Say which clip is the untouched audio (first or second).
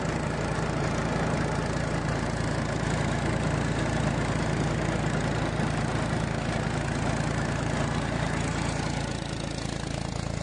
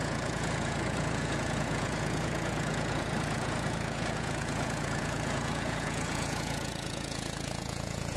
first